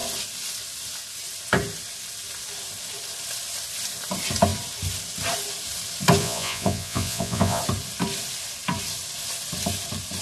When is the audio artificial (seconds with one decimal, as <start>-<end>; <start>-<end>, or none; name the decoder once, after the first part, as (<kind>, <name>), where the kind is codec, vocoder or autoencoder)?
6.2-7.6 (vocoder, Vocos)